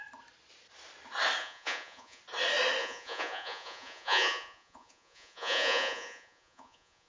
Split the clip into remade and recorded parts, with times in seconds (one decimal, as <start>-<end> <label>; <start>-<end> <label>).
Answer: 0.0-1.4 recorded; 1.4-2.2 remade; 2.2-2.8 recorded; 2.8-7.1 remade